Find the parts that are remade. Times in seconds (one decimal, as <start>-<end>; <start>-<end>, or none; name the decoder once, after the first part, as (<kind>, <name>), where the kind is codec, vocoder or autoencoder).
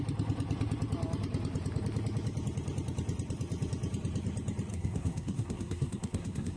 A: 4.7-6.6 (codec, SNAC)